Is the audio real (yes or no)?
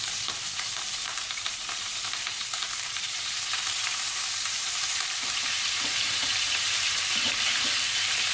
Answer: no